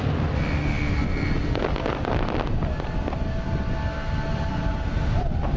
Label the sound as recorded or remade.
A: recorded